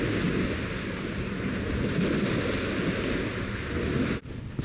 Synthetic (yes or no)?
no